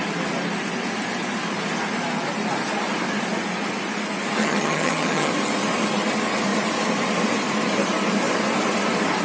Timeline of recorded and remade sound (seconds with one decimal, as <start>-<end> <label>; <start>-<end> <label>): 0.0-4.4 recorded; 4.4-5.3 remade; 5.3-9.2 recorded